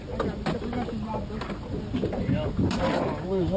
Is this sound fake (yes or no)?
no